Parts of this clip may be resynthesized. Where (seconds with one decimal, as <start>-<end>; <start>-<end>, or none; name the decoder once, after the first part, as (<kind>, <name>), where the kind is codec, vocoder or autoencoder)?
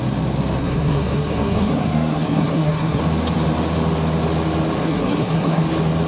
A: 0.6-3.0 (codec, SNAC); 4.8-5.6